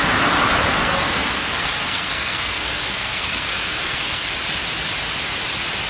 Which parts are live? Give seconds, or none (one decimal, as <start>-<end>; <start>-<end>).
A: 0.0-0.8; 4.3-5.9